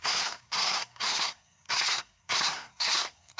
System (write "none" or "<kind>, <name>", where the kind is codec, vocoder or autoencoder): codec, SNAC